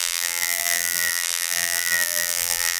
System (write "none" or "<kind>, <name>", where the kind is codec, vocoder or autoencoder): vocoder, BigVGAN v2